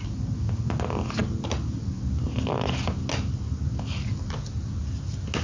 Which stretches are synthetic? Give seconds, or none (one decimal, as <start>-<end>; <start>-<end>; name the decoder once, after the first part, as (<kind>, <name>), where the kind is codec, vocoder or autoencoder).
none